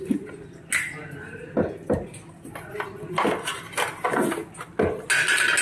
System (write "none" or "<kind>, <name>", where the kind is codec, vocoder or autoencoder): none